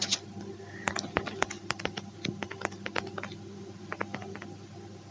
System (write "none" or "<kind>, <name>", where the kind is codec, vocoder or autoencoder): none